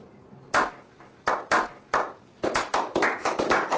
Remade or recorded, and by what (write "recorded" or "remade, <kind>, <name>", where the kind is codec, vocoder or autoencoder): recorded